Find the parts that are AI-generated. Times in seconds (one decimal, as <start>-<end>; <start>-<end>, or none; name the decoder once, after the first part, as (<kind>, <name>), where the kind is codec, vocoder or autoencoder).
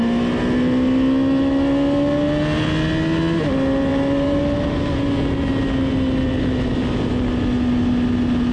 3.9-4.4 (vocoder, BigVGAN v2)